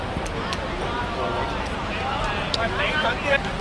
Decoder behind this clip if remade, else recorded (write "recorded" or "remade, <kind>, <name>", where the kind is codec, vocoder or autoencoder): recorded